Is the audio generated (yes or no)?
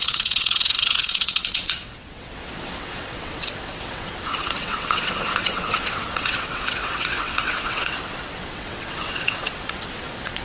yes